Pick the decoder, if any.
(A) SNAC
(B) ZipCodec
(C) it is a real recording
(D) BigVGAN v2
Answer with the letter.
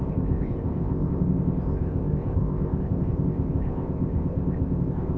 B